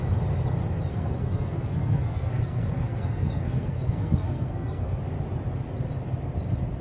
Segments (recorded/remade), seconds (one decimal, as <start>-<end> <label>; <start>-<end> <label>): 0.0-0.9 recorded; 0.9-5.0 remade; 5.0-6.8 recorded